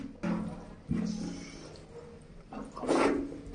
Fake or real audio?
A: real